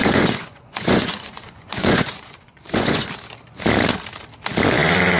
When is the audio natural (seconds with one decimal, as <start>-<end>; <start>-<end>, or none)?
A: 3.1-5.2